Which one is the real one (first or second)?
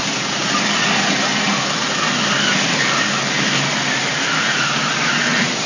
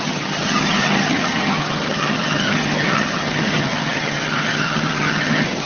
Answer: first